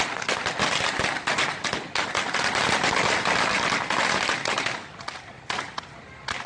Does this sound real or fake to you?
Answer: real